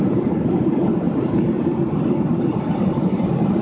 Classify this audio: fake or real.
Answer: real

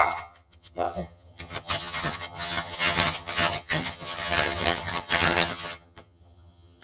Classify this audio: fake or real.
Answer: fake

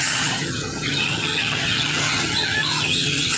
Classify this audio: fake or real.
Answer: fake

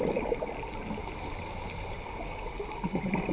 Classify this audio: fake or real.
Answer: real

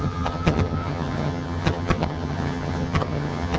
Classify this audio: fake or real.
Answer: fake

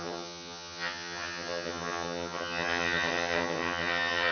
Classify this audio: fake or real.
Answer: fake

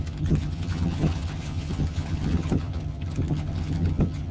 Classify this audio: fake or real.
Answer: fake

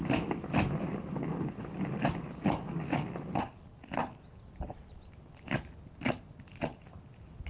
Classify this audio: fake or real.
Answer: real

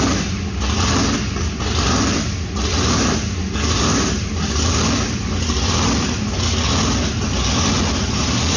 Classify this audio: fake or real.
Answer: real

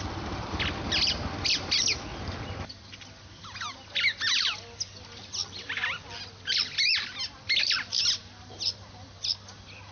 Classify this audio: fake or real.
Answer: real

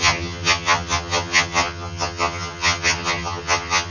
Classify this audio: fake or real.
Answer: fake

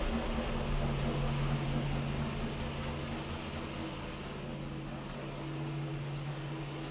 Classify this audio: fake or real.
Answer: real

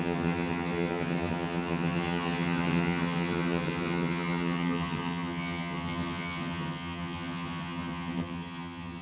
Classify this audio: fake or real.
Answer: fake